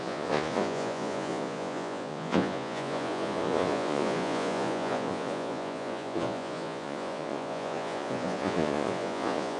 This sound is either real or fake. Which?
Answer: fake